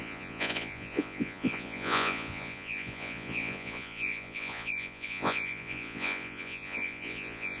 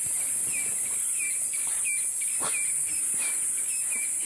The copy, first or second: first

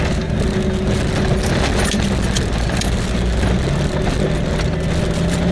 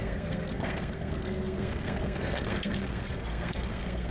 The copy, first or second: second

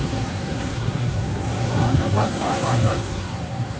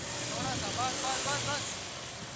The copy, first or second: first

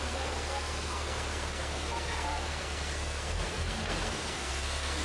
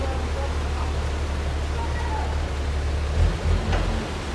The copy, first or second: first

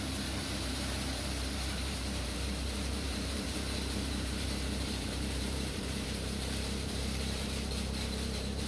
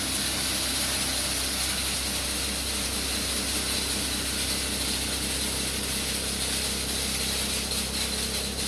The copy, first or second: first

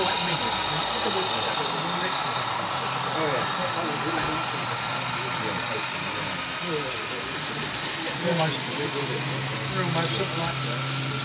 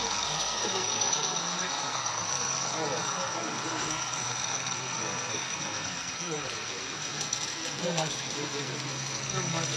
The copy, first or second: second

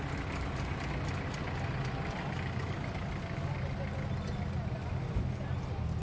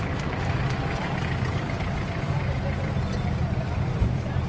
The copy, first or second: second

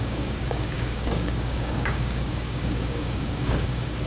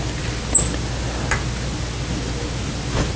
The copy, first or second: first